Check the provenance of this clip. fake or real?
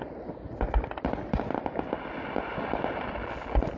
real